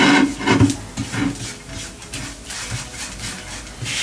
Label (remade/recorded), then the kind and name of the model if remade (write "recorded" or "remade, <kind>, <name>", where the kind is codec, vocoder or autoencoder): recorded